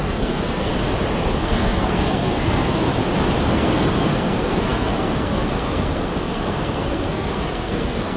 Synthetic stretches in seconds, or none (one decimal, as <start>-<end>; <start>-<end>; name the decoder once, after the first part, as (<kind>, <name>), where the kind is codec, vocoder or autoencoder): 0.0-0.7 (codec, SNAC); 1.4-2.9; 3.5-8.2